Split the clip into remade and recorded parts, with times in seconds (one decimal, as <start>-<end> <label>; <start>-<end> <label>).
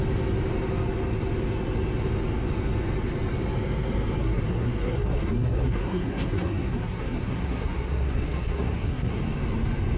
0.0-4.2 recorded; 4.2-9.2 remade; 9.2-10.0 recorded